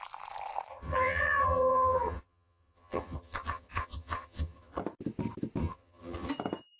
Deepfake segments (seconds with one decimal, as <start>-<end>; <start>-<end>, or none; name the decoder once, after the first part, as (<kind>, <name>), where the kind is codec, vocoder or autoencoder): 0.7-4.8 (vocoder, HiFi-GAN); 5.6-6.3